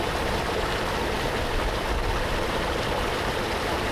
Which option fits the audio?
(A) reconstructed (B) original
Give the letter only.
A